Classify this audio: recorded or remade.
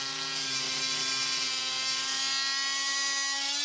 recorded